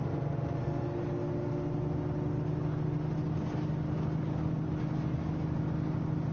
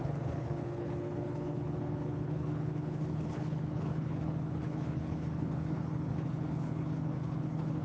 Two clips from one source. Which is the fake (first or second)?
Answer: second